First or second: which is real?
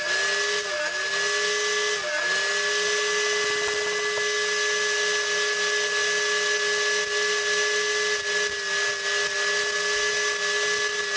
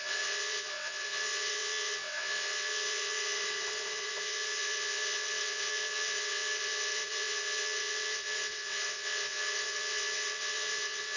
first